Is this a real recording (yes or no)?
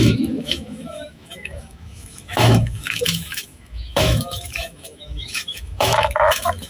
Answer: no